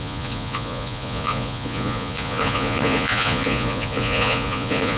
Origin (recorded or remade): remade